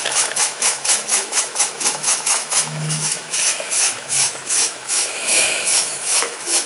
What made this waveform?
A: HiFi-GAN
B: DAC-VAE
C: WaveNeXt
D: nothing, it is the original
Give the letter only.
B